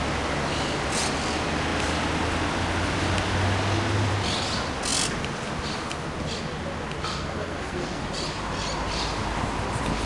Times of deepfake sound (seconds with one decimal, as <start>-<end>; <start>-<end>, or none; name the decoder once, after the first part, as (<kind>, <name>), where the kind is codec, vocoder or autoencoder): 7.1-8.0 (codec, SNAC)